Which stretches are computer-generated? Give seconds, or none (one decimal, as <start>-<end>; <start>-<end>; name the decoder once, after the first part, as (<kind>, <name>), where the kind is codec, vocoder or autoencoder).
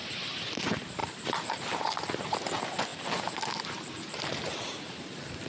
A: 0.0-0.5 (vocoder, BigVGAN v2); 1.0-2.0; 2.9-3.6